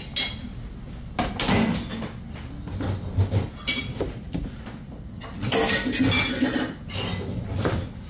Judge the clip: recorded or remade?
recorded